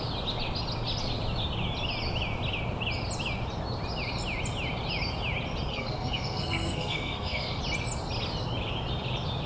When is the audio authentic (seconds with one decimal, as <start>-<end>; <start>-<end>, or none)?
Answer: 0.0-5.7; 7.6-9.5